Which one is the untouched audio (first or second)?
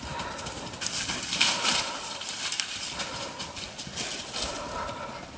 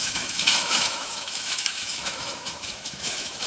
first